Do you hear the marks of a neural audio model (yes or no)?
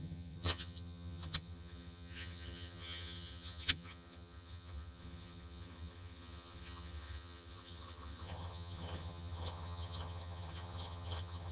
yes